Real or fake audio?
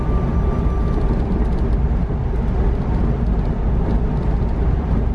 real